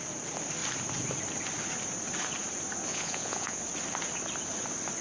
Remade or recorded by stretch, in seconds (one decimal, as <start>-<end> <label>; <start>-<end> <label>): 0.0-2.9 recorded; 2.9-3.6 remade; 3.6-5.0 recorded